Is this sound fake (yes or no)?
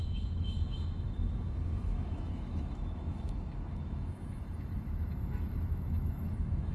yes